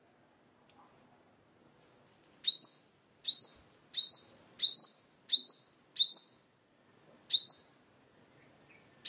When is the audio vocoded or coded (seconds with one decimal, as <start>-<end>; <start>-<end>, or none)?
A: none

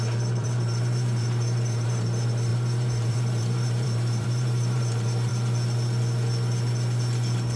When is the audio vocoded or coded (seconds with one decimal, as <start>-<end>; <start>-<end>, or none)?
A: 0.0-5.3

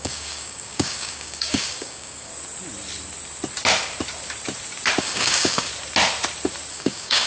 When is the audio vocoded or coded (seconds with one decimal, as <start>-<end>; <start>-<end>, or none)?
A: 0.0-2.3; 5.0-5.7; 6.7-7.3